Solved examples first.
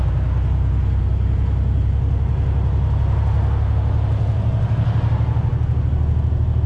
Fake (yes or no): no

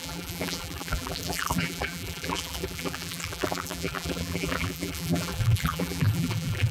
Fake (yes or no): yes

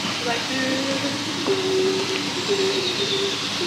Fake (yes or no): no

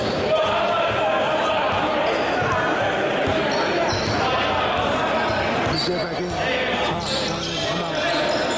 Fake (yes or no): no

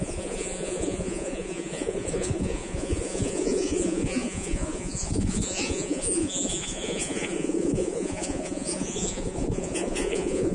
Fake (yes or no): yes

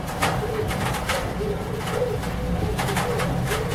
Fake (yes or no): no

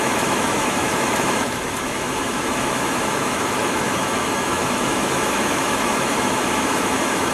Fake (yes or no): yes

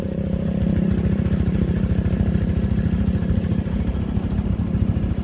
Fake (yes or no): yes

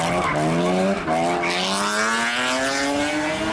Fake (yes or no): no